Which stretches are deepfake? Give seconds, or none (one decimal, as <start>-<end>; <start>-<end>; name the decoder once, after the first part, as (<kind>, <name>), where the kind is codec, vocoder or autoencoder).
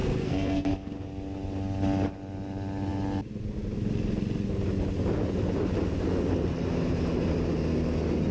0.0-0.7 (codec, SNAC)